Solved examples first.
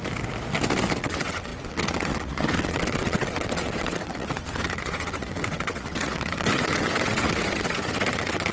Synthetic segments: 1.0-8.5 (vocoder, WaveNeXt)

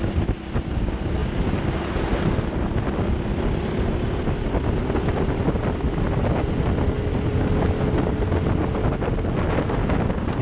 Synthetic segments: none

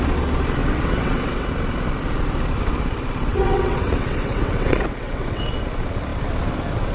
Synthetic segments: 0.6-1.5 (vocoder, WaveNeXt); 3.3-5.5

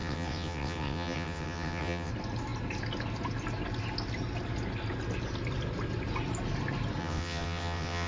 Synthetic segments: 0.0-2.1 (vocoder, WaveNeXt); 7.0-8.1

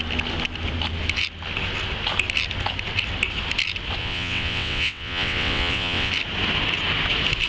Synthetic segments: 4.0-6.1 (vocoder, WaveNeXt)

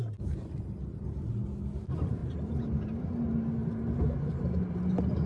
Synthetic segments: none

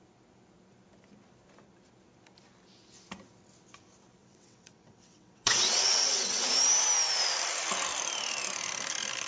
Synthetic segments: 4.2-6.5 (vocoder, WaveNeXt)